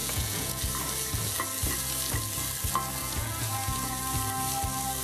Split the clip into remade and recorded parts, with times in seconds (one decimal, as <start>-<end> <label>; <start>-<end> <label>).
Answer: 0.0-0.6 remade; 0.6-3.0 recorded; 3.0-4.0 remade; 4.0-5.0 recorded